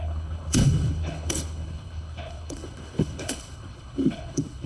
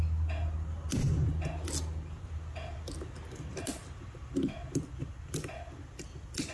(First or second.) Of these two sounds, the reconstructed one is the first